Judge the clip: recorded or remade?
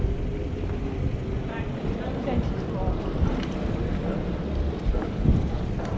recorded